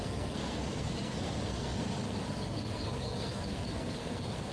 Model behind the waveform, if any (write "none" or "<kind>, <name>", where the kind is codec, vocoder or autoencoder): codec, SNAC